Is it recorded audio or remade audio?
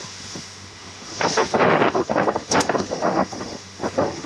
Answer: remade